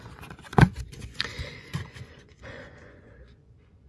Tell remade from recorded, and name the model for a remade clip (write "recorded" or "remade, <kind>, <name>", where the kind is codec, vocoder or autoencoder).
remade, vocoder, Vocos